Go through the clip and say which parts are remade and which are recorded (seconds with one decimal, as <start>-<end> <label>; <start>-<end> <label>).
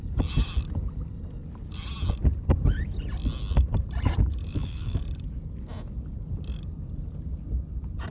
0.0-4.4 recorded; 4.4-5.0 remade; 5.0-8.1 recorded